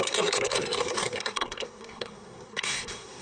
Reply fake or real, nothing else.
fake